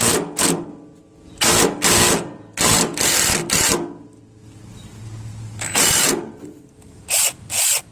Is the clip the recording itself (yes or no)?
yes